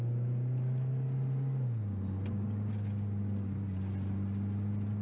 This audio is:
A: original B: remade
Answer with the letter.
A